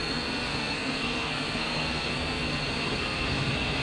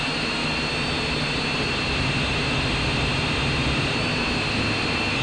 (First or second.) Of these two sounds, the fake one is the first